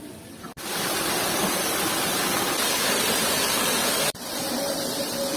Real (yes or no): no